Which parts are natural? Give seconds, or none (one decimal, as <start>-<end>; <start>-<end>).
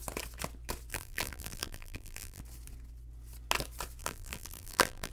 0.0-0.9; 2.4-4.0